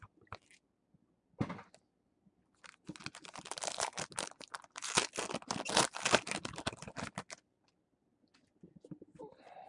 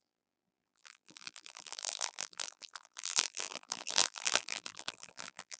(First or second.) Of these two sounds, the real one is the first